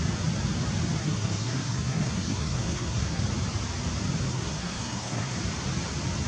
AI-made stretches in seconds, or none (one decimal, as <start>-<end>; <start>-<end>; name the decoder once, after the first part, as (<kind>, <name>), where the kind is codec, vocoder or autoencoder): 1.0-3.2 (codec, SNAC); 4.3-5.4